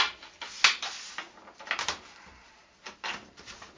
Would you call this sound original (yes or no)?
yes